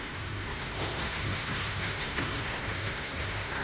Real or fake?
fake